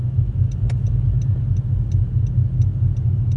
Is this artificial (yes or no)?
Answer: no